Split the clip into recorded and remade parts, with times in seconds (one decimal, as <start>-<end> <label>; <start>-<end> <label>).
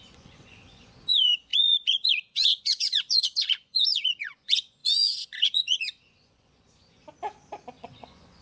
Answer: 0.0-7.0 remade; 7.0-7.8 recorded; 7.8-8.4 remade